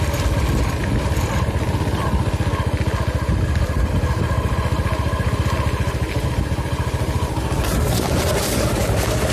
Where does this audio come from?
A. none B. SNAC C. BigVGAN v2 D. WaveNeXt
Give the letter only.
A